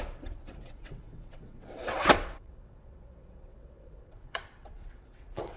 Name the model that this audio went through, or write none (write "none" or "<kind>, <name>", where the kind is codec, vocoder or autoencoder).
vocoder, WaveNeXt